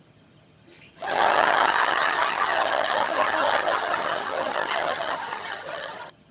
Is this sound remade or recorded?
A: remade